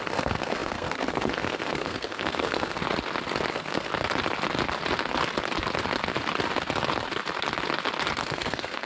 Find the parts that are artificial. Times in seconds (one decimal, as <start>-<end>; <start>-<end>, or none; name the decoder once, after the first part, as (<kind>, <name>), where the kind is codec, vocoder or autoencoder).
0.0-2.8 (codec, SNAC); 3.5-3.9; 8.2-8.9